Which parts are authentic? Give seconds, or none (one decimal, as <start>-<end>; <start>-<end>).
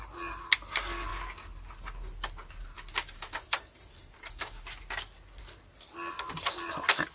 0.0-7.1